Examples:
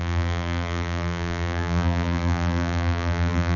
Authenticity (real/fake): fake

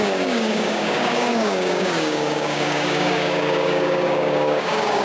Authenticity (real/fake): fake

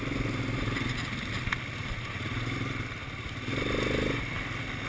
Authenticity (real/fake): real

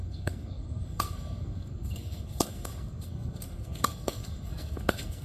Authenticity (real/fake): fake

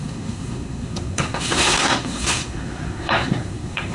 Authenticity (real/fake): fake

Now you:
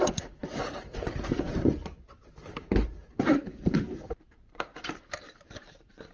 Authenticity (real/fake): fake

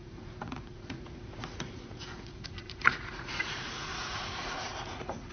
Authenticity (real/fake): fake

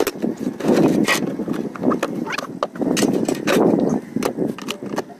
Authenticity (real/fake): real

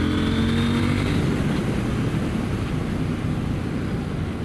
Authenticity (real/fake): real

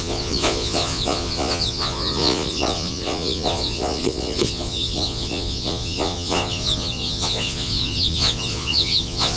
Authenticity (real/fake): fake